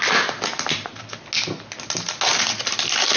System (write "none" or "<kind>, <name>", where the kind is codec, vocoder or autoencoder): none